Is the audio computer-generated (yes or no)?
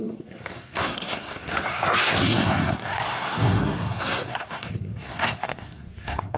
yes